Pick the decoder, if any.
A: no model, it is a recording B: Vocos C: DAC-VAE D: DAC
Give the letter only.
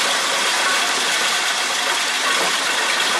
A